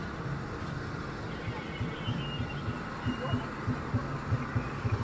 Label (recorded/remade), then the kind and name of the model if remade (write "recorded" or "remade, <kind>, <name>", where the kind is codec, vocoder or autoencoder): recorded